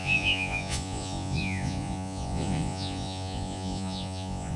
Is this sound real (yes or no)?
no